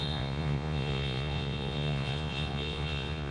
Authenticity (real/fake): fake